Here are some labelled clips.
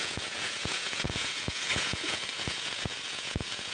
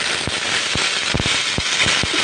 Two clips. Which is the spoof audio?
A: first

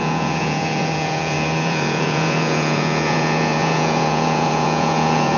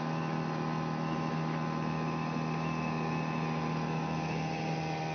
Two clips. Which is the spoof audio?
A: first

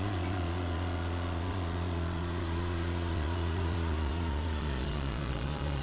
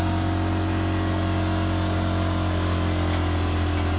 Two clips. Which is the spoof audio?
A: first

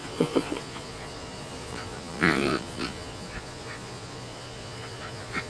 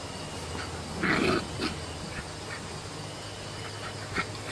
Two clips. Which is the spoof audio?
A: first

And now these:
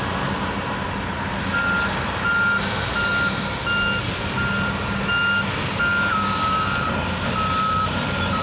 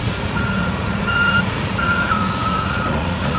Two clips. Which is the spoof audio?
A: second